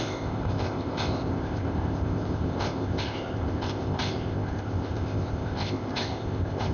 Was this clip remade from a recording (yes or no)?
yes